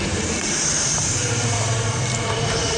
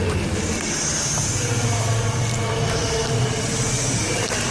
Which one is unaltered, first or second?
second